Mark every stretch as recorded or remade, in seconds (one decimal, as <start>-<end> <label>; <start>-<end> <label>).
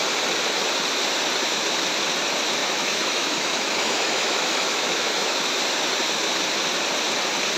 0.0-2.6 recorded; 2.6-5.5 remade; 5.5-7.6 recorded